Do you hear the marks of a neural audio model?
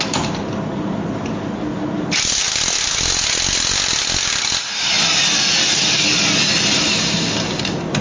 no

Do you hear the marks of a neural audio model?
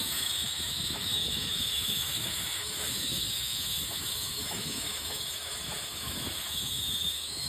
yes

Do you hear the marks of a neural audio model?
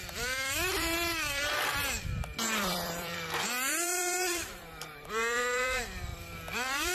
yes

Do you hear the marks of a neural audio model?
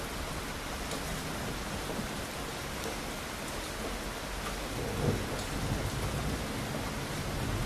no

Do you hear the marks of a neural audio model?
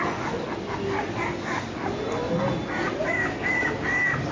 no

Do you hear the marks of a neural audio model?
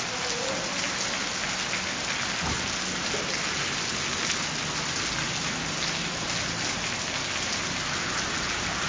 no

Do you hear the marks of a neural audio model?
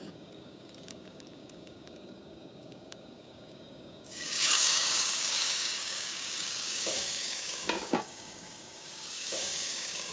yes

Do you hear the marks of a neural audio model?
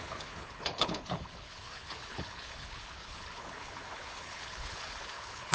yes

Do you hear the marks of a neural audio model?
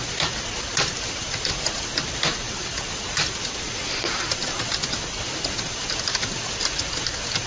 no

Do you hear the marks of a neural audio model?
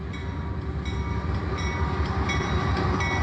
no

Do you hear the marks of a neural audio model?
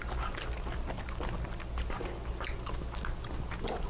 no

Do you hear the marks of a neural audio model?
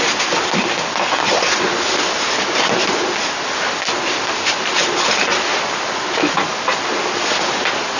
no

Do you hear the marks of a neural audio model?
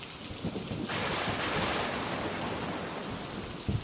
no